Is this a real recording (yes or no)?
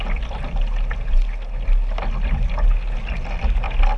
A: yes